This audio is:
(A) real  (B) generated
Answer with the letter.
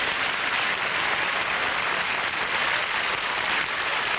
A